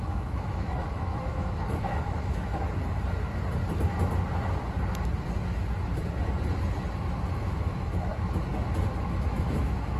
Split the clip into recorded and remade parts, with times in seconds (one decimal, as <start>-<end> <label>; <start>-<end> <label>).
0.0-2.8 remade; 2.8-7.3 recorded; 7.3-8.1 remade; 8.1-9.0 recorded; 9.0-10.0 remade